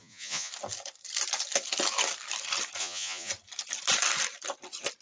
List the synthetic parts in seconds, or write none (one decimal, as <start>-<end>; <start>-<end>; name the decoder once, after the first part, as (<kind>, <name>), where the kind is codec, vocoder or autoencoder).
0.0-0.5 (vocoder, Vocos); 2.8-3.3